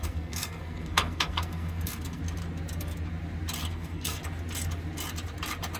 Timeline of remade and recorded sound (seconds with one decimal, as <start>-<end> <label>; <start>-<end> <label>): 0.0-2.2 remade; 2.2-3.6 recorded; 3.6-4.2 remade; 4.2-5.8 recorded